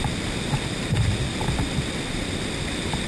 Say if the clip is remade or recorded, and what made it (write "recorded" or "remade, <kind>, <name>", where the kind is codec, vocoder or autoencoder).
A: recorded